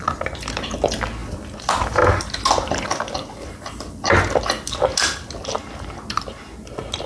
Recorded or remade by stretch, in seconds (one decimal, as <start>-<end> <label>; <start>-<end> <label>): 0.0-1.2 recorded; 1.2-5.4 remade; 5.4-7.1 recorded